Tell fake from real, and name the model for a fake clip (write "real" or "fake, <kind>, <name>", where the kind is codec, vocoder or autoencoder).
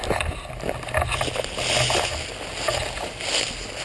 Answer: real